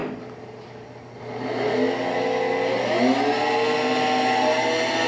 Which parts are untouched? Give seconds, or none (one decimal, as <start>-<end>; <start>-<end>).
0.0-5.1